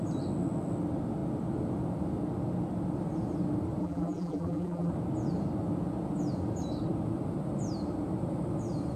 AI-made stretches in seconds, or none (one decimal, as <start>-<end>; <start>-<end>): 3.8-4.9